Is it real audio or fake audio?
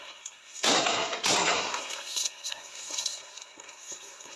fake